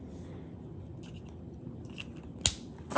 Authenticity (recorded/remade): recorded